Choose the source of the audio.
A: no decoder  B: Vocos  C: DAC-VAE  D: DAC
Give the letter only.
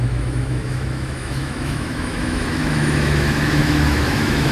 C